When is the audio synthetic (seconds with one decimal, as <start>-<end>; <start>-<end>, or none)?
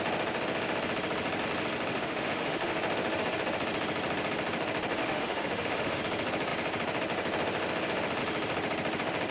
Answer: 1.9-2.8; 5.0-6.0